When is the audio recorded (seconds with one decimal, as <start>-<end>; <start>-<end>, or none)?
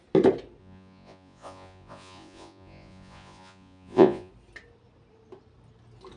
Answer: 0.0-0.6; 4.3-6.2